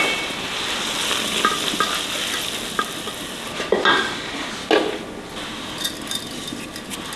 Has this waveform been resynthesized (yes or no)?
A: no